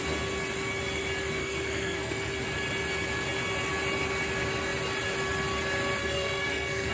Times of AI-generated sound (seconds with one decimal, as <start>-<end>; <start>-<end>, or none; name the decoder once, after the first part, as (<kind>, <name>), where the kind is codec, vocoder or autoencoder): 1.4-2.3 (codec, SNAC); 6.0-6.9